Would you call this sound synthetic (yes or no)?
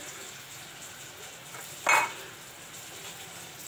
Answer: no